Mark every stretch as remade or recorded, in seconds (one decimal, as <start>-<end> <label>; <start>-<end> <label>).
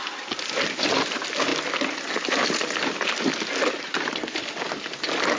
0.0-5.4 recorded